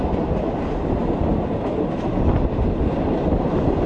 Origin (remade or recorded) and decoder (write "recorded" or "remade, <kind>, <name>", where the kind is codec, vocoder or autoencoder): recorded